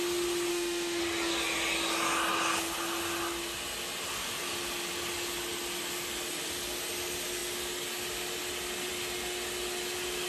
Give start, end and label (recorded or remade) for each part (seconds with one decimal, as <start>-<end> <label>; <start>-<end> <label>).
0.0-0.5 recorded; 0.5-1.0 remade; 1.0-10.3 recorded